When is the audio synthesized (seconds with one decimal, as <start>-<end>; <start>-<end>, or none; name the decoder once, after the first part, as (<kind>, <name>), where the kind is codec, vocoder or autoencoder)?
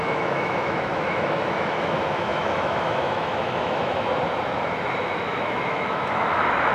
0.0-4.1 (autoencoder, DAC-VAE); 5.0-6.7